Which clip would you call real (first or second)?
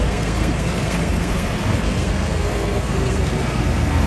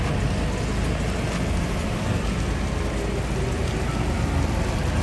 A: second